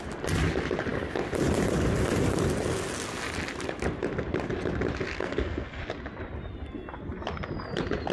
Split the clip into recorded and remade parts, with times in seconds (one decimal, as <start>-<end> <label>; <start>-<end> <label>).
0.0-5.2 recorded; 5.2-5.8 remade; 5.8-8.1 recorded